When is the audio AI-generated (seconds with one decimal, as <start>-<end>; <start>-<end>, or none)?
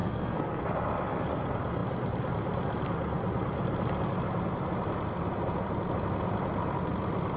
0.0-0.6